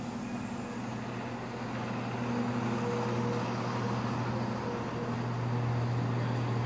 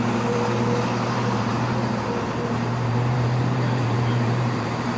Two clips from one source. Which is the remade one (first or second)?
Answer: second